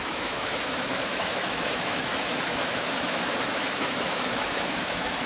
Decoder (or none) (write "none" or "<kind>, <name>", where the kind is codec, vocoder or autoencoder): autoencoder, DAC-VAE